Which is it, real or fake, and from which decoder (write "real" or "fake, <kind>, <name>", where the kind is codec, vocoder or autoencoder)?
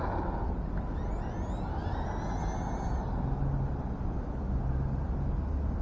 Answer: real